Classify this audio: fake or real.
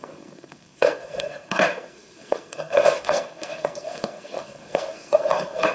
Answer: fake